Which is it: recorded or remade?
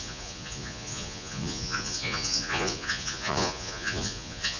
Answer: remade